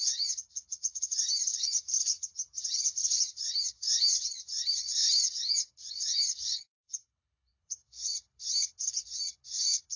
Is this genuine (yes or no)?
no